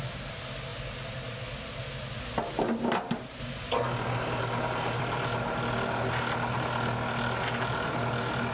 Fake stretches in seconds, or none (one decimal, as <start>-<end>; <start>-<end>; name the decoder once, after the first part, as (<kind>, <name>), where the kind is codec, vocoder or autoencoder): none